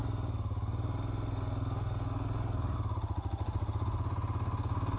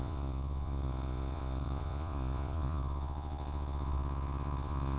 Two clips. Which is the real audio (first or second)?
first